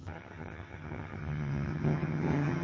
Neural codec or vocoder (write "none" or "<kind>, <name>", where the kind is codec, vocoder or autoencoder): vocoder, HiFi-GAN